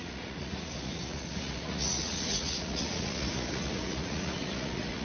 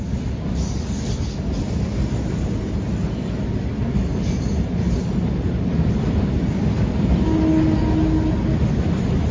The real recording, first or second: second